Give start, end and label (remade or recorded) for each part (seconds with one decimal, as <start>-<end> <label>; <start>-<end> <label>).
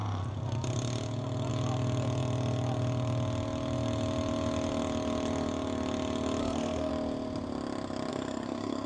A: 0.0-6.4 recorded; 6.4-6.9 remade; 6.9-8.1 recorded; 8.1-8.9 remade